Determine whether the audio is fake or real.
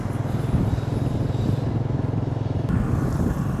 real